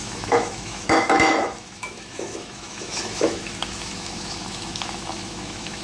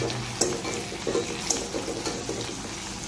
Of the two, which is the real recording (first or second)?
second